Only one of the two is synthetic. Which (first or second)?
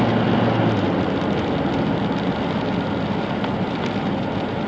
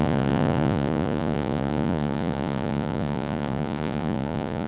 second